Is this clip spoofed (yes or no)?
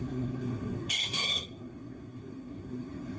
yes